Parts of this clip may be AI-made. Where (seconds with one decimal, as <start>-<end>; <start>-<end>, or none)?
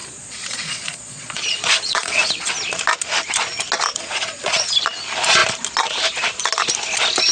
0.0-2.5; 3.9-4.7